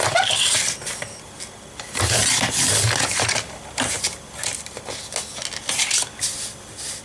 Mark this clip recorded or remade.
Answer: recorded